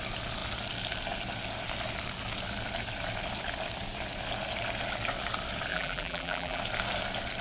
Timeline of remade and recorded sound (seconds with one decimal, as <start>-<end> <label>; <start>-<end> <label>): 0.0-5.7 recorded; 5.7-6.6 remade; 6.6-7.4 recorded